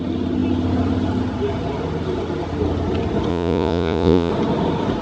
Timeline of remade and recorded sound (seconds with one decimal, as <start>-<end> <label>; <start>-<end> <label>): 0.0-3.3 recorded; 3.3-4.3 remade; 4.3-5.0 recorded